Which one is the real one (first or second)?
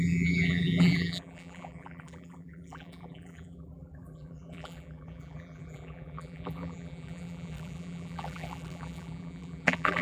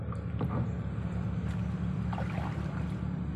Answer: second